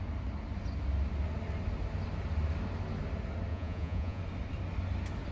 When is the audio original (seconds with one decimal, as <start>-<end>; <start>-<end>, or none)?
0.0-3.5; 4.2-5.3